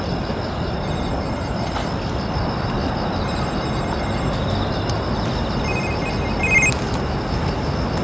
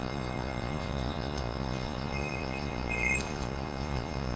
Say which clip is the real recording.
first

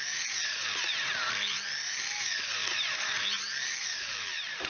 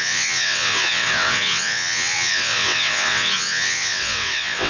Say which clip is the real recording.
first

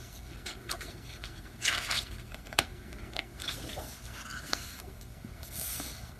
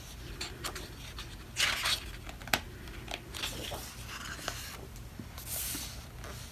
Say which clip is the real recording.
second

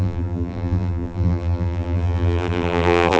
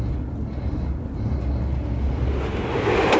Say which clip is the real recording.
second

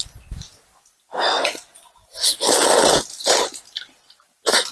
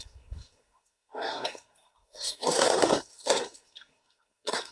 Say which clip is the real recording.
first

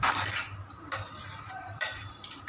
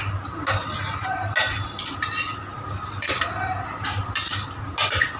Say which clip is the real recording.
second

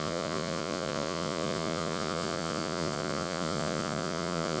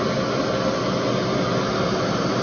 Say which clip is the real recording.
second